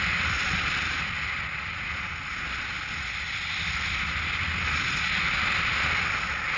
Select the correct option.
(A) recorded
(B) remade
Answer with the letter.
A